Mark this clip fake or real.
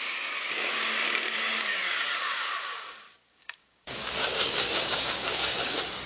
fake